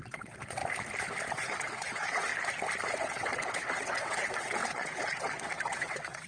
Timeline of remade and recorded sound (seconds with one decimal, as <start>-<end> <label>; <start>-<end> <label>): 0.0-0.6 remade; 0.6-1.3 recorded; 1.3-2.3 remade; 2.3-2.9 recorded; 2.9-6.3 remade